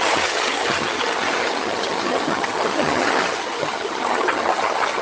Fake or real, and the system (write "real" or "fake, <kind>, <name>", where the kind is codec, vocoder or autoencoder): fake, vocoder, HiFi-GAN